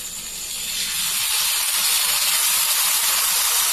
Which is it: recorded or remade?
recorded